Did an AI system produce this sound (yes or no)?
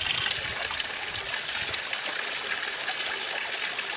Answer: no